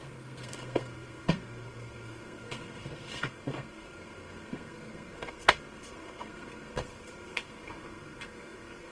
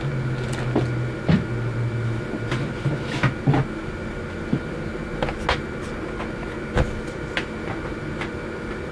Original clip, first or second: second